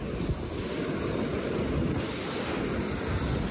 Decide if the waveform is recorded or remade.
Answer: recorded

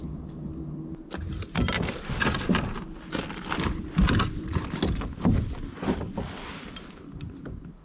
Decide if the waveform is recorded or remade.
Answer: recorded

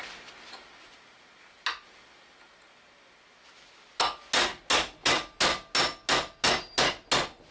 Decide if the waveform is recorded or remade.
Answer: recorded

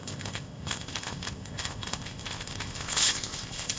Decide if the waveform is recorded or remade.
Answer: remade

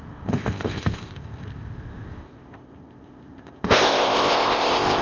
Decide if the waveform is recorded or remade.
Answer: remade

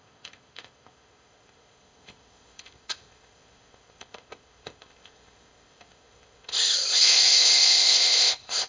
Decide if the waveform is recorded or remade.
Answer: remade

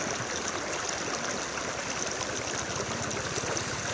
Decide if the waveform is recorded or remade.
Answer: recorded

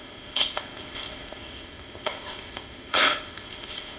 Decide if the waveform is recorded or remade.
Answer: remade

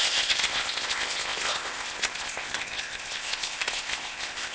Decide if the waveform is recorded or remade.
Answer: remade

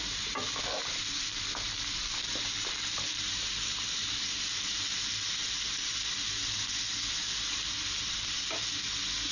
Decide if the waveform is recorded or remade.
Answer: recorded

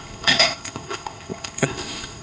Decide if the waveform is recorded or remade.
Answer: remade